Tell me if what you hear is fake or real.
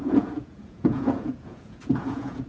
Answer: fake